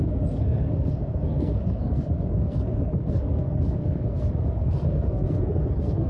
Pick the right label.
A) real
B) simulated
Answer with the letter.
B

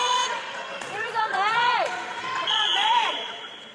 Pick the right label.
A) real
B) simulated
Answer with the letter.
B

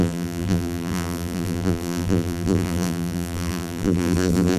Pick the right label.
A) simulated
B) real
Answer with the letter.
A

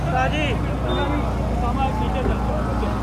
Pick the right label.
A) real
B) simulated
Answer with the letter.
A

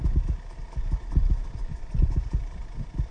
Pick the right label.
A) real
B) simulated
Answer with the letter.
A